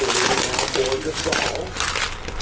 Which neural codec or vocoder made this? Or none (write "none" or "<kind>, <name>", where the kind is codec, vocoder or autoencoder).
none